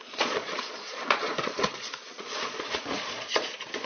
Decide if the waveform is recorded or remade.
remade